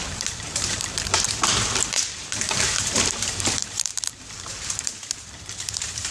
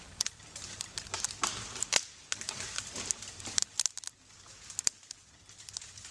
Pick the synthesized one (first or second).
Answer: first